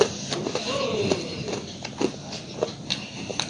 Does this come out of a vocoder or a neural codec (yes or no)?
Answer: yes